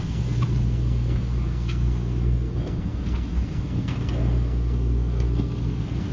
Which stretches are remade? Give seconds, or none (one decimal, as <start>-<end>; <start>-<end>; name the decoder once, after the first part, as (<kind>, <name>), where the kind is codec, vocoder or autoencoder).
0.0-6.1 (codec, SNAC)